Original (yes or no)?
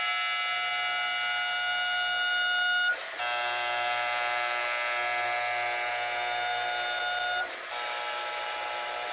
yes